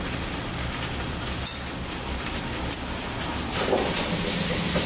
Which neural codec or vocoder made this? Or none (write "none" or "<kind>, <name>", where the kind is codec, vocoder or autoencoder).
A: none